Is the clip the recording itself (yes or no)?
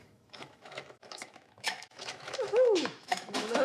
no